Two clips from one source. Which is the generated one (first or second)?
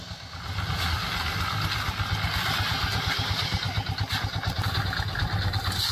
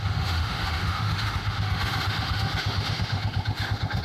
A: second